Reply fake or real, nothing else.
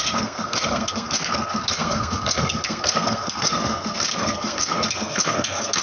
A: fake